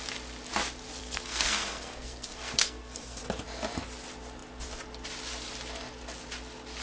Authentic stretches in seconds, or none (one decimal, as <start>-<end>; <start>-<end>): 0.0-1.0; 3.2-6.8